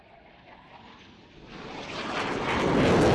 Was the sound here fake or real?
real